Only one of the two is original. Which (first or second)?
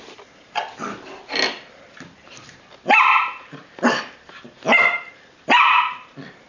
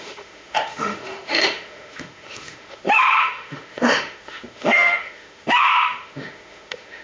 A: first